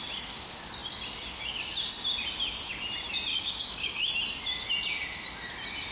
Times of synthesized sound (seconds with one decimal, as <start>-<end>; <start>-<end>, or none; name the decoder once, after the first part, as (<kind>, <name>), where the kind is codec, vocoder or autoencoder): 3.3-4.1 (codec, DAC)